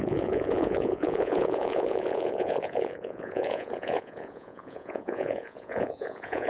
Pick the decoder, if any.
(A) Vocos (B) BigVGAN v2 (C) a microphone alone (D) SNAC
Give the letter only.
A